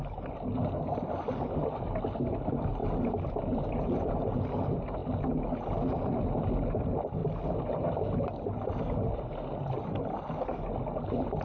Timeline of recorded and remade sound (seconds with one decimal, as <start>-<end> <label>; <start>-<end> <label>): 0.0-2.8 recorded; 2.8-4.4 remade; 4.4-11.4 recorded